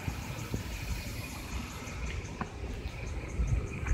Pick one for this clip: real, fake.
fake